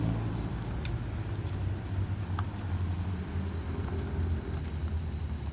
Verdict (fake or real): real